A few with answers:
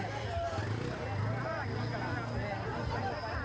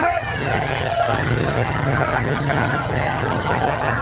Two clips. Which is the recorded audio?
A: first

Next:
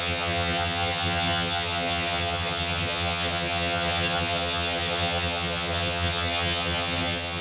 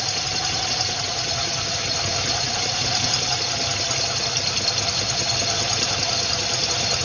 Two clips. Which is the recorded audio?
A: second